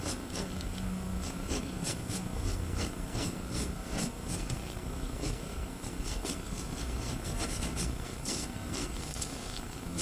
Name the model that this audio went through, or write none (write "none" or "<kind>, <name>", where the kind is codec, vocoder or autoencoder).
codec, SNAC